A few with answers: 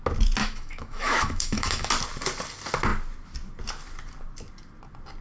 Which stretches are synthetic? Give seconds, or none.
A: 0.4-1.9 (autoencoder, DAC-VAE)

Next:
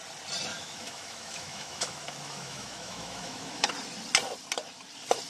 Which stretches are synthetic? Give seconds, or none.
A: 0.5-3.7 (autoencoder, DAC-VAE)

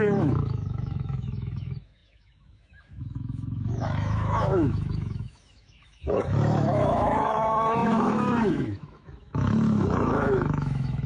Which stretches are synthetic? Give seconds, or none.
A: 0.0-11.1 (autoencoder, DAC-VAE)

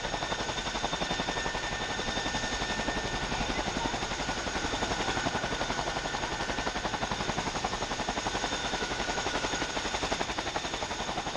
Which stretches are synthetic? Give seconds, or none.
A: 8.6-9.7 (autoencoder, DAC-VAE)

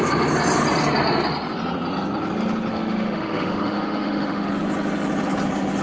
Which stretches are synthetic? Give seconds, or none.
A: 2.7-4.5 (autoencoder, DAC-VAE)